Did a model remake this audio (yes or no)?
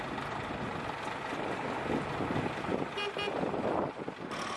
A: no